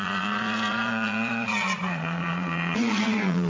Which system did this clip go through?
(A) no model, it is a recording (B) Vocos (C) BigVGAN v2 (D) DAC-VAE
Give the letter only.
B